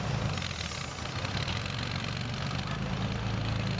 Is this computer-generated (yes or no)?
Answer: no